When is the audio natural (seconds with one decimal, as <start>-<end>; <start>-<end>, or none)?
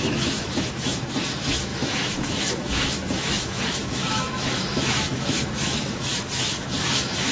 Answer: none